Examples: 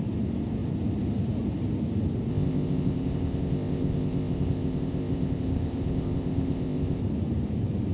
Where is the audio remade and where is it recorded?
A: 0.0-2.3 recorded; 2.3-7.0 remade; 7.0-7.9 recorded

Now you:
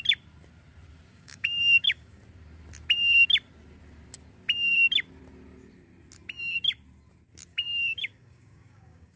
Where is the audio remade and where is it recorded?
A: 0.0-1.1 recorded; 1.1-2.2 remade; 2.2-7.5 recorded; 7.5-9.2 remade

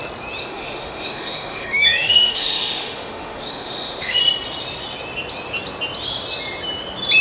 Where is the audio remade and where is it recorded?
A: 0.0-0.4 recorded; 0.4-4.2 remade; 4.2-7.2 recorded

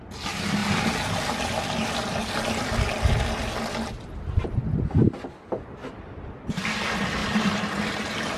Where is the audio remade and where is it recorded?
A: 0.0-8.4 recorded

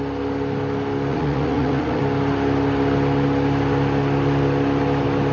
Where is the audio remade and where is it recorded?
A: 0.0-1.1 recorded; 1.1-2.0 remade; 2.0-5.3 recorded

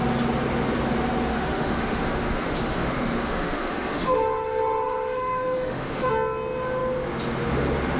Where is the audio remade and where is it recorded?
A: 0.0-1.3 recorded; 1.3-6.1 remade; 6.1-8.0 recorded

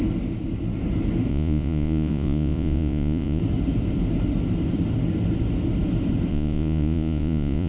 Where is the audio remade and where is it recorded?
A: 0.0-1.3 recorded; 1.3-3.4 remade; 3.4-6.3 recorded; 6.3-7.7 remade